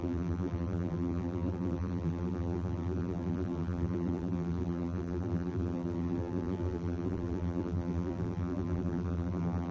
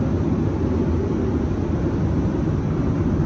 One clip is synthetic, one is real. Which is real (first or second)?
second